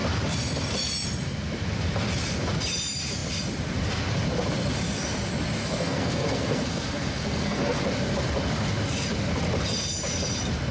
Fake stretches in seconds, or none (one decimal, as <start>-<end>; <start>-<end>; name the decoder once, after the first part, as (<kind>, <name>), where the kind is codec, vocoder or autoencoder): 5.6-7.8 (codec, SNAC)